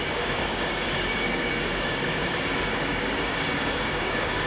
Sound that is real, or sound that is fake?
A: fake